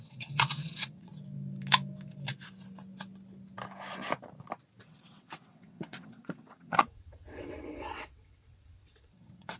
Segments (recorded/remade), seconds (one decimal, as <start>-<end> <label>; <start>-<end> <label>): 0.0-1.1 remade; 1.1-4.9 recorded; 4.9-9.6 remade